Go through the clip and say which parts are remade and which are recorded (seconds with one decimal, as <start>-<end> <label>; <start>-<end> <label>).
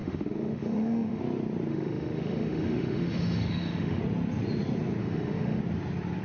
0.0-1.2 remade; 1.2-1.7 recorded; 1.7-4.0 remade; 4.0-5.0 recorded; 5.0-5.6 remade; 5.6-6.2 recorded